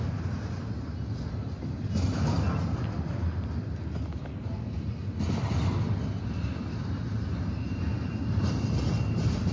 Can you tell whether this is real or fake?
real